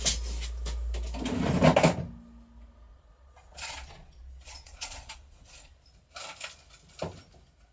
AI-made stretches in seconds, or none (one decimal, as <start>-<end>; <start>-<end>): 2.9-5.7